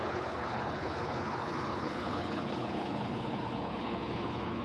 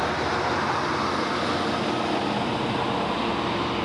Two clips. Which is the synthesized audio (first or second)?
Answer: first